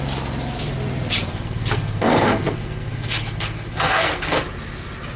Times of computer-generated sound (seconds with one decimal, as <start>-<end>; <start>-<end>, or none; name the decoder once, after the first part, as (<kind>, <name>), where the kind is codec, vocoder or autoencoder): 1.3-4.4 (codec, SNAC)